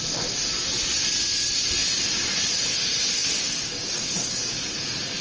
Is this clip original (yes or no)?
yes